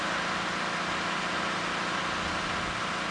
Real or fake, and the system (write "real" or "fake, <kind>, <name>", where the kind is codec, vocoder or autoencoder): real